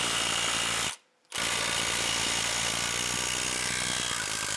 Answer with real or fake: fake